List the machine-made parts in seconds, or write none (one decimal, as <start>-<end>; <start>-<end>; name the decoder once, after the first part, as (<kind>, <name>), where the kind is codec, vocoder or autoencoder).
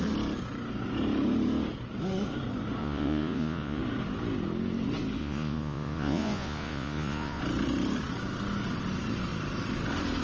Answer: 2.8-3.8 (vocoder, Vocos); 5.2-7.4